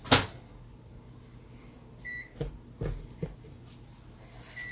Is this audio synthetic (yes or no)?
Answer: no